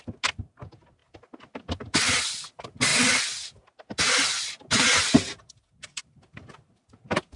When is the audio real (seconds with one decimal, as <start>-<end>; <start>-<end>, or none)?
0.0-7.4